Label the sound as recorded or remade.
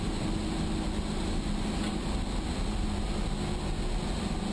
recorded